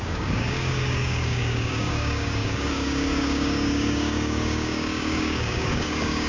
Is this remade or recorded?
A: remade